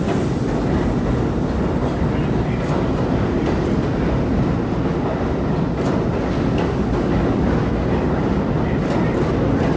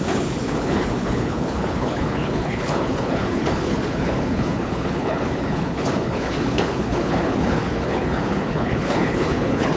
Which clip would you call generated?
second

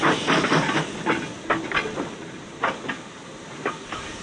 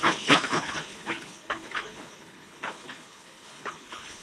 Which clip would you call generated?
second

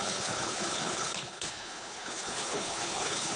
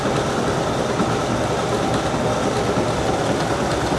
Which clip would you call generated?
first